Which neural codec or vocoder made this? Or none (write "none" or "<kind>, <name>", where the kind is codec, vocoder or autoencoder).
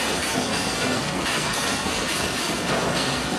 codec, SNAC